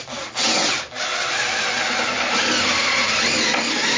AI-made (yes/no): no